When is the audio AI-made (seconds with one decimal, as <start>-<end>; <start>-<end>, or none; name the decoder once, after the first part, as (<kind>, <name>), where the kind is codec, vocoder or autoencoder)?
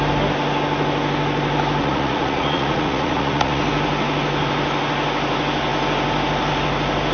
1.8-3.6 (vocoder, Vocos)